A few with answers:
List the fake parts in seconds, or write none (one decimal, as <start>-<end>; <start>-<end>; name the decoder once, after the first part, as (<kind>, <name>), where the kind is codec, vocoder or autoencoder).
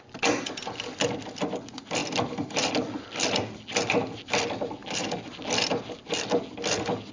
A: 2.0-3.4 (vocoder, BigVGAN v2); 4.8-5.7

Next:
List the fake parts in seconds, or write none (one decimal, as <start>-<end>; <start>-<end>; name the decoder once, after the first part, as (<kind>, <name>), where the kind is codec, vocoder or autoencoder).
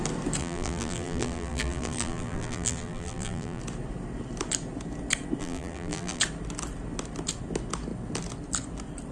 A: 0.4-3.6 (vocoder, BigVGAN v2); 5.4-6.2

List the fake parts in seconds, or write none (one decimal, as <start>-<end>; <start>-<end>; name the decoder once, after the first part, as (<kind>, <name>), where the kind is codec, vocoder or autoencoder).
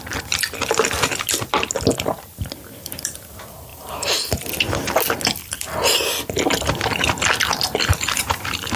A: 3.7-4.2 (vocoder, BigVGAN v2); 7.8-8.8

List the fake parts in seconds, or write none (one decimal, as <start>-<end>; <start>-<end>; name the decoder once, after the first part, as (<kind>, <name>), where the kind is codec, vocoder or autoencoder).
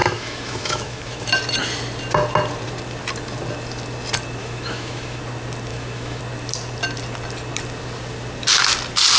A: 0.0-1.3 (autoencoder, DAC-VAE); 4.4-5.2; 5.7-6.2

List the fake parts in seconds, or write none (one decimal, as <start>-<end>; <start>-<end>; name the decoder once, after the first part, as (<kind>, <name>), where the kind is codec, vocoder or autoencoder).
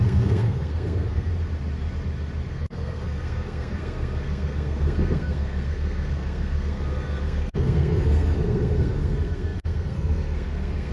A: 0.0-1.3 (codec, SNAC); 2.5-10.9